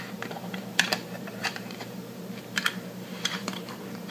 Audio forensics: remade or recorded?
remade